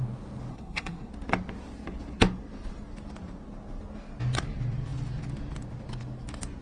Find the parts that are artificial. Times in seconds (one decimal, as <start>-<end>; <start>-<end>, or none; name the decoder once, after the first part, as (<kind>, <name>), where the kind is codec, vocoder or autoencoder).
0.5-1.1 (codec, SNAC)